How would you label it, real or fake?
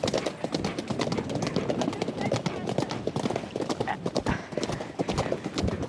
real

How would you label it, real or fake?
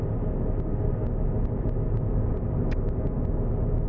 real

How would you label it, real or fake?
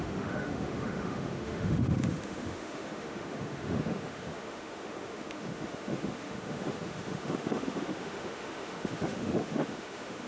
fake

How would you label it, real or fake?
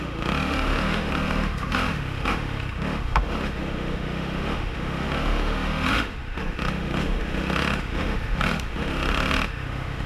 fake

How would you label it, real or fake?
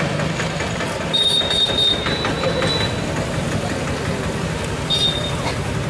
real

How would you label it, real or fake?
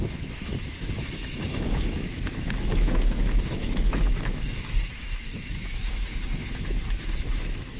fake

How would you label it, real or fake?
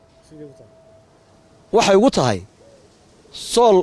real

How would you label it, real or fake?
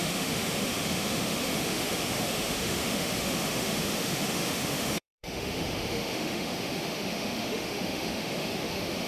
fake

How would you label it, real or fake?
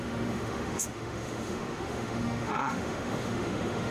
fake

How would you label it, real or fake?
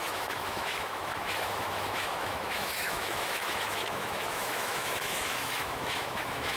fake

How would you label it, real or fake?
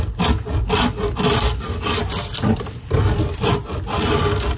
real